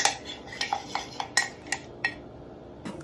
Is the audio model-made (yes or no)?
no